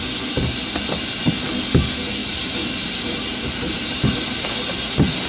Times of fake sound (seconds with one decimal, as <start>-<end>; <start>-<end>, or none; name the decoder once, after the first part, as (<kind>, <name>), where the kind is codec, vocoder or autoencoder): 2.2-4.5 (vocoder, BigVGAN v2)